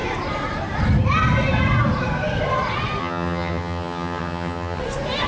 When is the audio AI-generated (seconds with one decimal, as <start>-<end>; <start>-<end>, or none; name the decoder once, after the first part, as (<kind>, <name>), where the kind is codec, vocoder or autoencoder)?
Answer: 3.0-4.8 (vocoder, HiFi-GAN)